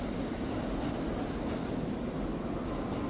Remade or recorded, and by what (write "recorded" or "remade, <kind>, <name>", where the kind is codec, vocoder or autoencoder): recorded